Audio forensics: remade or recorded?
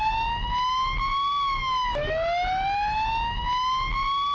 recorded